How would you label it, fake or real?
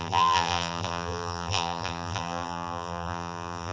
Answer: fake